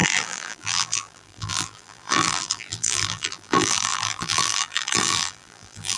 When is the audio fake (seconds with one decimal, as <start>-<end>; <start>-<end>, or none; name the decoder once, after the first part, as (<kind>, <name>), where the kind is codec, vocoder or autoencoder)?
0.0-6.0 (vocoder, BigVGAN v2)